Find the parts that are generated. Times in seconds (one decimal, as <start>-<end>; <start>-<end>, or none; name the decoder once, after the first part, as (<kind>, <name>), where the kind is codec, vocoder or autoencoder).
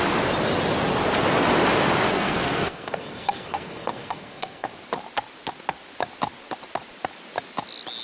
2.1-4.7 (codec, SNAC)